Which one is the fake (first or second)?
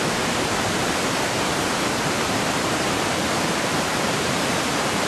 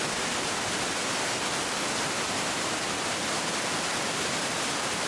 first